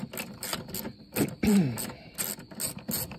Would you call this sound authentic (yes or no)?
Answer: yes